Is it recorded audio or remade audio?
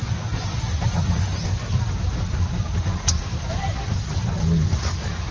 recorded